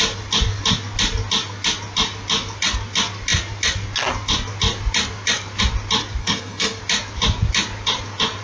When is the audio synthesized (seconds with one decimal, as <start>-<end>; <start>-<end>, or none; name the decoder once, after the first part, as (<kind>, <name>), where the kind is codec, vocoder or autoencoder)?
6.2-6.8 (codec, SNAC)